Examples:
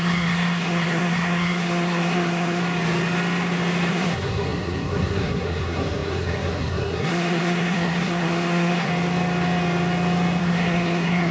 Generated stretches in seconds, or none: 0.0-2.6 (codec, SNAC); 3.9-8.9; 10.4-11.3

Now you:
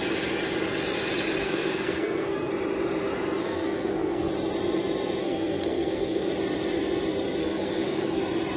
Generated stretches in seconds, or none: 1.4-2.5 (codec, SNAC); 3.4-4.3; 5.2-6.3; 7.4-8.2

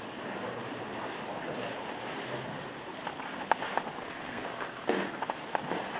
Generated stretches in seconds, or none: 4.0-5.2 (codec, SNAC)

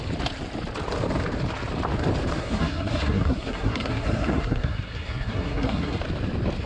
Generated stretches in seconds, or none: 2.3-6.0 (codec, SNAC)

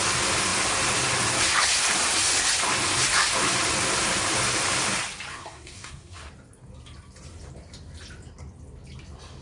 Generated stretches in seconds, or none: 5.3-6.3 (codec, SNAC)

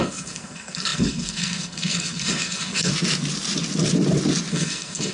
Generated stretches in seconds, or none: 0.0-2.9 (codec, SNAC); 4.5-5.1

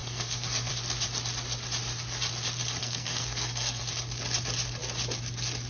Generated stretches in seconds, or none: 0.0-0.7 (codec, SNAC); 2.8-3.8

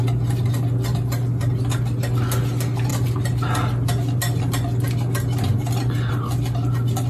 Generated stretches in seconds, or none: none